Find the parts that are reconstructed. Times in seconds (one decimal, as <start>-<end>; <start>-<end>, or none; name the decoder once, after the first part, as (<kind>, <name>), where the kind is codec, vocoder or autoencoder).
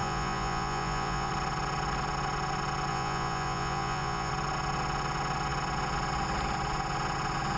0.0-1.3 (vocoder, Vocos); 2.9-4.3